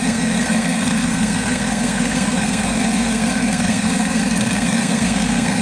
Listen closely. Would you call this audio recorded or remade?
remade